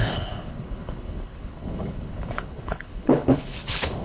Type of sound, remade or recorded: remade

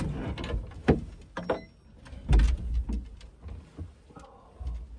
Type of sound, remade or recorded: recorded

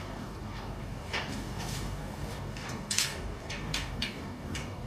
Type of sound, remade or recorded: remade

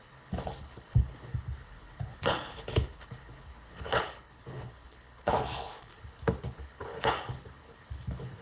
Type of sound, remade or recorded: remade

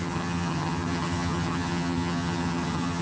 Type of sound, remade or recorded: remade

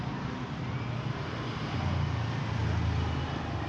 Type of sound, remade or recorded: recorded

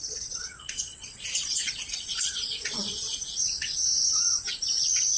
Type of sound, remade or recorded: remade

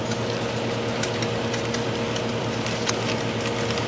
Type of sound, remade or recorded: recorded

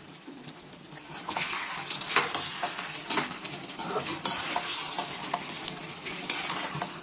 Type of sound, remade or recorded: recorded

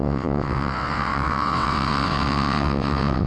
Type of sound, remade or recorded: remade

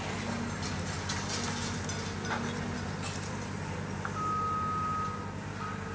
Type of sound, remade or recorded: recorded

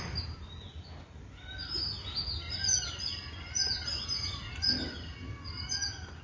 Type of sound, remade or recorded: recorded